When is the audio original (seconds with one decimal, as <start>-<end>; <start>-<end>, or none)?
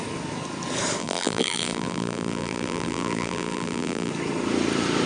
0.0-1.0; 4.1-5.1